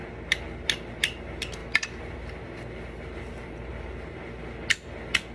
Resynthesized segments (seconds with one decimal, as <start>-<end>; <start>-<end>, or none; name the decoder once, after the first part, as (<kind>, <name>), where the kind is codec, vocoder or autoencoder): 1.6-3.7 (vocoder, BigVGAN v2)